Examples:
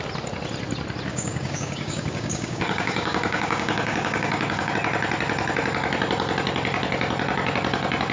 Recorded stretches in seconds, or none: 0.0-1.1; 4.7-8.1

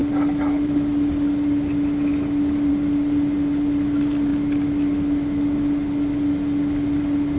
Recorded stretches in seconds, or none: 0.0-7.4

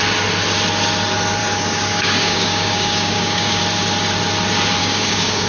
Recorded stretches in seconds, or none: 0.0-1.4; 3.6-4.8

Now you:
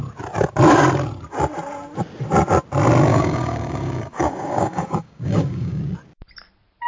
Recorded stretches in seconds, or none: 0.0-3.1; 5.8-6.9

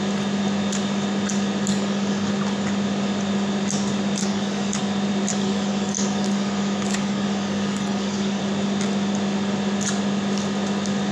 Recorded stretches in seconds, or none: 0.0-1.7; 2.3-4.2; 4.8-5.3; 8.4-11.1

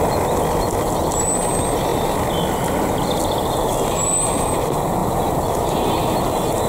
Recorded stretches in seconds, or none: 0.0-6.7